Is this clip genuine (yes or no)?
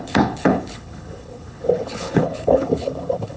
no